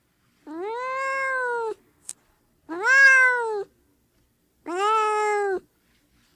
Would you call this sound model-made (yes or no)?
no